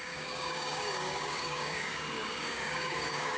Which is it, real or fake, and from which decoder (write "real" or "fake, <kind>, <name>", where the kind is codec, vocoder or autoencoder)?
fake, codec, DAC